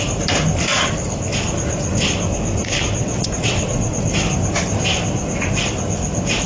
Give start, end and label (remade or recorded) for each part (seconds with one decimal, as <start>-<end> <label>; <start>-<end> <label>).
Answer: 0.0-3.0 recorded; 3.0-3.9 remade; 3.9-6.5 recorded